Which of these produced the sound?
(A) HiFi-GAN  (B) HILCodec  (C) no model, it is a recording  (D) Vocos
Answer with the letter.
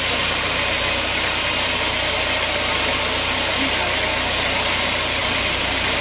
C